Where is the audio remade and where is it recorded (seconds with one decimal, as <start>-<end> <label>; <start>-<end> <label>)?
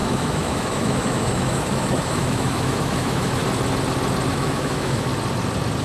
0.0-3.4 remade; 3.4-4.3 recorded; 4.3-5.1 remade; 5.1-5.8 recorded